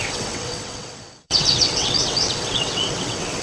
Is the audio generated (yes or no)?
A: yes